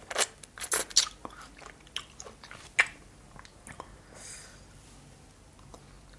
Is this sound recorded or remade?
recorded